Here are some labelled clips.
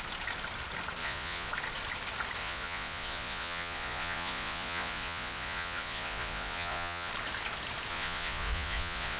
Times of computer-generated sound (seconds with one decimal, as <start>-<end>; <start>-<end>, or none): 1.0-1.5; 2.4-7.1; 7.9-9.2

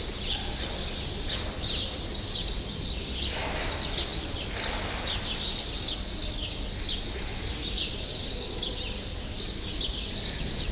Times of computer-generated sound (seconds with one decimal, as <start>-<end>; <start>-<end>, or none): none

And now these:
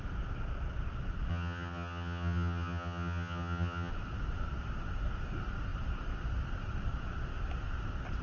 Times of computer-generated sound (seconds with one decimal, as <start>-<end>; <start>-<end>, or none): 1.3-3.9

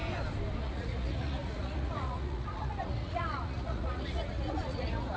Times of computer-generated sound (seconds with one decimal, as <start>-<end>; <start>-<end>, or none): 0.6-5.2

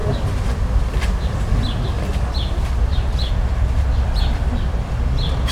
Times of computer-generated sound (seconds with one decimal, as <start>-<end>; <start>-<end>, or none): 3.3-5.5